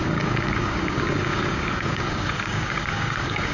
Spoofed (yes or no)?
yes